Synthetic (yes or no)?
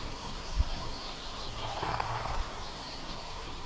yes